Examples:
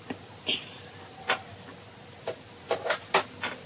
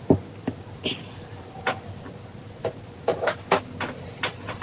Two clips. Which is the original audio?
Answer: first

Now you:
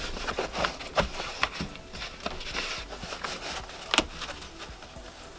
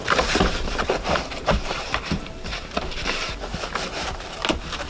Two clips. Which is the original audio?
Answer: first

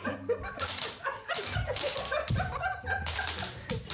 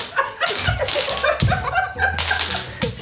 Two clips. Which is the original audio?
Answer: second